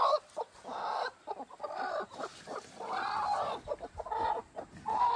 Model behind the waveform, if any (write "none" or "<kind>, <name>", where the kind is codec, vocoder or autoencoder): vocoder, BigVGAN v2